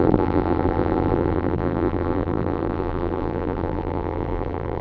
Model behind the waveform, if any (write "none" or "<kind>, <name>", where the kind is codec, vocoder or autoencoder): vocoder, BigVGAN v2